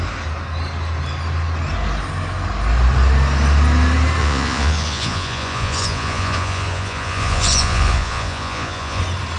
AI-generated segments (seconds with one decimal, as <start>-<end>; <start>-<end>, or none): 4.2-9.0